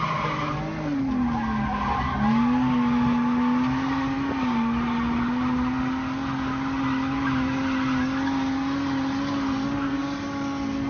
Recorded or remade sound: recorded